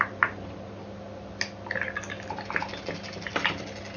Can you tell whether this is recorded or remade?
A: recorded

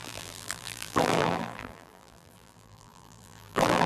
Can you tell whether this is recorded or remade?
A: remade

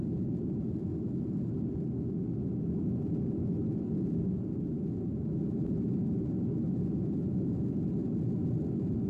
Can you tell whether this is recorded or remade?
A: recorded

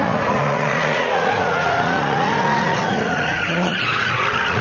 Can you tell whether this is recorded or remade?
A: remade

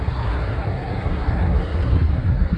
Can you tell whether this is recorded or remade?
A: remade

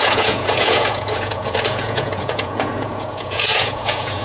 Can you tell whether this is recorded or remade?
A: remade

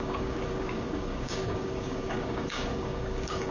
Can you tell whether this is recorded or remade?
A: remade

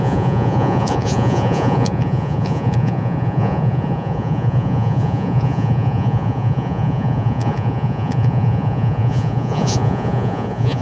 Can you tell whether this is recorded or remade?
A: remade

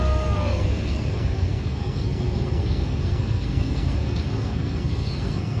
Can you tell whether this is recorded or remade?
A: remade